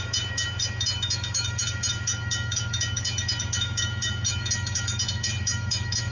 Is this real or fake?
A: fake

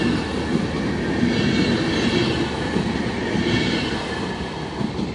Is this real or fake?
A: real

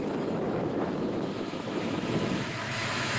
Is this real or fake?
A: fake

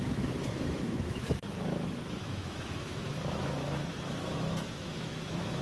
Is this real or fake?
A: fake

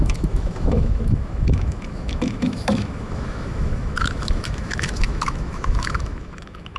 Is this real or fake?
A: fake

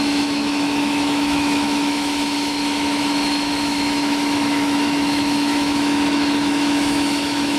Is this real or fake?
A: fake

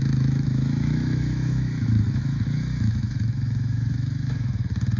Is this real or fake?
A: fake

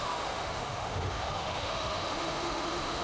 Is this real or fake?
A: fake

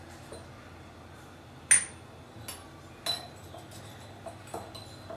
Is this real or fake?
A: real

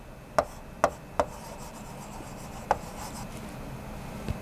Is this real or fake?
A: real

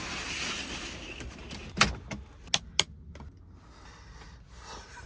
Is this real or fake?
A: real